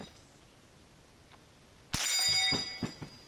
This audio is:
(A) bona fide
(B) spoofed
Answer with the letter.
A